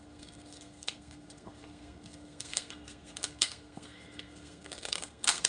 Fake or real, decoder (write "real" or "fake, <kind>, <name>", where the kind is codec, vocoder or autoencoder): fake, codec, SNAC